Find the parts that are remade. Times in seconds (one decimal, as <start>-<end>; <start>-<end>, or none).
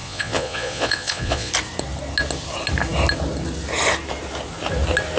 0.0-1.5